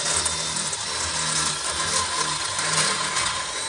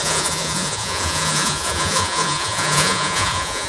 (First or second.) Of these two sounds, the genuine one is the first